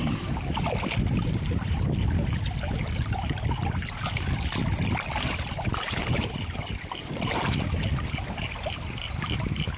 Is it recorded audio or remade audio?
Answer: recorded